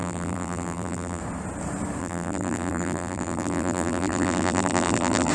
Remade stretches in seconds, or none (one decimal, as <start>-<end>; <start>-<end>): 0.0-1.2; 2.0-5.3